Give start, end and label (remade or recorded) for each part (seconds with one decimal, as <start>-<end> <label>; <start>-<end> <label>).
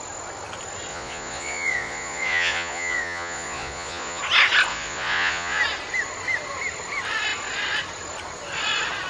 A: 0.0-0.9 recorded; 0.9-4.2 remade; 4.2-4.7 recorded; 4.7-5.6 remade; 5.6-9.1 recorded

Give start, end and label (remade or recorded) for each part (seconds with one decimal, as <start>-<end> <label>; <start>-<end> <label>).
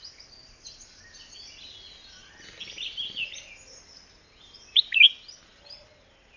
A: 0.0-6.4 recorded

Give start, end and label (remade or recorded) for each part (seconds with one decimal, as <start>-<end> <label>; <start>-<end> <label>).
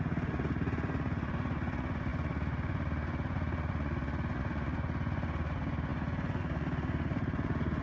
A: 0.0-7.8 remade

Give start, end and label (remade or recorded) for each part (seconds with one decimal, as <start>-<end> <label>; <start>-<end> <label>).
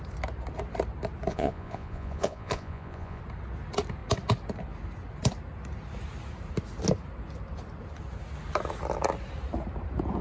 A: 0.0-1.3 recorded; 1.3-3.2 remade; 3.2-10.2 recorded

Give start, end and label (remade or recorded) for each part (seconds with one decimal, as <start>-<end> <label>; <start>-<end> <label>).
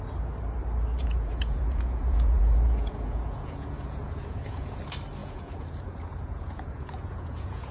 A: 0.0-1.0 recorded; 1.0-4.8 remade; 4.8-5.2 recorded; 5.2-7.7 remade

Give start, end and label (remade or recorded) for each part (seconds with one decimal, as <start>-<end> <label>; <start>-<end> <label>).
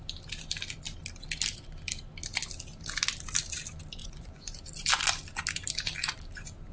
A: 0.0-4.0 recorded; 4.0-4.6 remade; 4.6-6.7 recorded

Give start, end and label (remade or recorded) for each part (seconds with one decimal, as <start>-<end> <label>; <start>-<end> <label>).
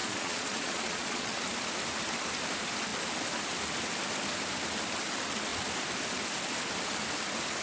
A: 0.0-1.4 remade; 1.4-7.6 recorded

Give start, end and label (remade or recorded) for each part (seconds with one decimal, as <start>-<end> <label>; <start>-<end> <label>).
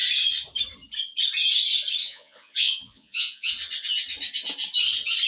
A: 0.0-2.0 recorded; 2.0-3.5 remade; 3.5-5.3 recorded